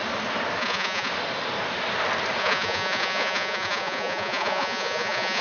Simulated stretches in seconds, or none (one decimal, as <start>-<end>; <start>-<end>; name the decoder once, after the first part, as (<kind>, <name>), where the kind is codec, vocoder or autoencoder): 0.6-1.1 (vocoder, Vocos); 2.4-5.4